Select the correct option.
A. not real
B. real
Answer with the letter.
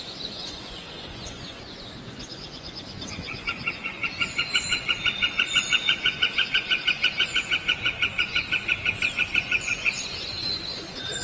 A